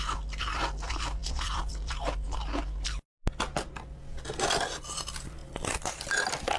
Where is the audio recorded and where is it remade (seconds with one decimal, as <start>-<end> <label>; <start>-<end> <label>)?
0.0-1.2 recorded; 1.2-2.0 remade; 2.0-6.6 recorded